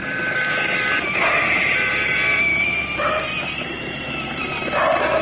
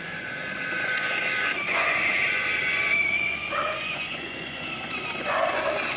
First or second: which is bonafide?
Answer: first